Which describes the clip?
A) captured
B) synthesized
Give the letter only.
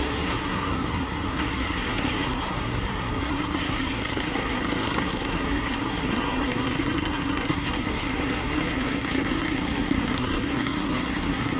B